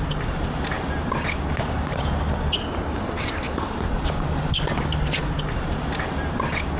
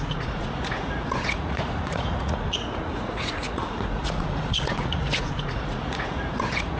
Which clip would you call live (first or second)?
first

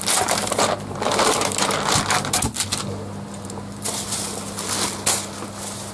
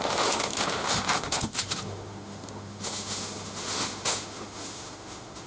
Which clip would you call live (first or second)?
first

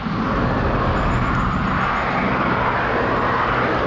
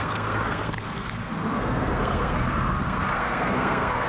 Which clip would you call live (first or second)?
first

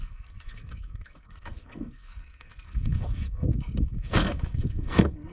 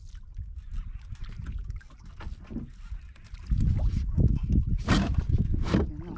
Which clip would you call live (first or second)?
second